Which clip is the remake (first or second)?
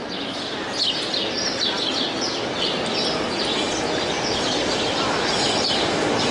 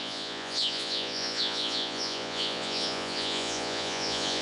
second